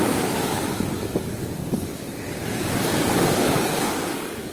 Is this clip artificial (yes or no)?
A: yes